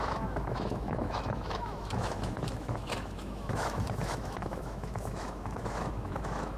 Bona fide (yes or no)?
no